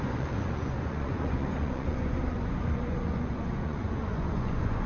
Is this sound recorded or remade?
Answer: remade